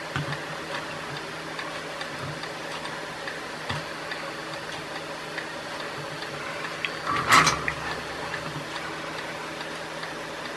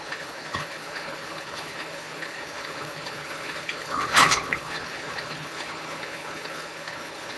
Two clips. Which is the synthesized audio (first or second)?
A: second